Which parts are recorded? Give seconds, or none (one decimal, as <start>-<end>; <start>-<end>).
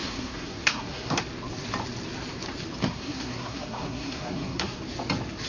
1.2-2.8; 4.8-5.5